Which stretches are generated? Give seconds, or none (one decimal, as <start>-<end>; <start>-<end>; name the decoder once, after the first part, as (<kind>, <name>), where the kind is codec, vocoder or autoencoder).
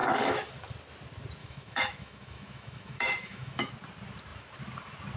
0.0-0.5 (autoencoder, DAC-VAE); 1.4-3.7